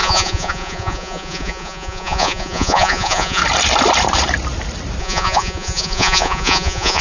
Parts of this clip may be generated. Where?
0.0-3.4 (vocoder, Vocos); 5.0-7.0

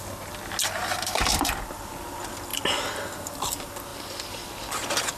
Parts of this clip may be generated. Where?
3.9-5.2 (vocoder, BigVGAN v2)

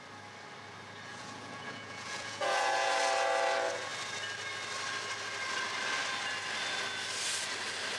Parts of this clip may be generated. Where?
1.1-3.0 (vocoder, Vocos)